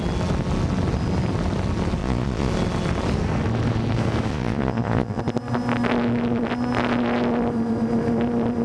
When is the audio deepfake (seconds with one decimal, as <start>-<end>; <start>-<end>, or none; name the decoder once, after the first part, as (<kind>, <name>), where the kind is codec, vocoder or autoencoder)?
2.0-2.5 (vocoder, Vocos); 4.3-5.2